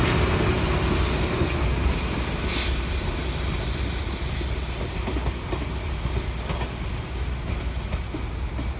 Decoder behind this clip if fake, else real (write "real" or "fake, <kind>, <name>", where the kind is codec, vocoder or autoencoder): real